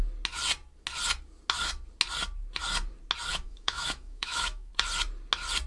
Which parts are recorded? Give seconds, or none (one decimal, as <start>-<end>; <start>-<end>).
0.0-3.3; 4.7-5.7